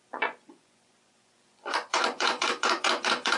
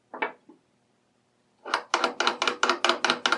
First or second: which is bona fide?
second